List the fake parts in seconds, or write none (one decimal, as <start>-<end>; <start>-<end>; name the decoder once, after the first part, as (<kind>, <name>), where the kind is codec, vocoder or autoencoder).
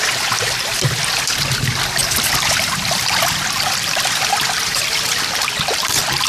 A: 2.0-5.8 (vocoder, BigVGAN v2)